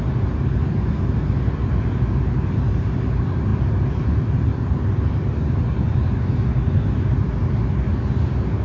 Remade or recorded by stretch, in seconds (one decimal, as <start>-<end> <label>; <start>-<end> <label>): 0.0-3.5 recorded; 3.5-6.1 remade; 6.1-8.6 recorded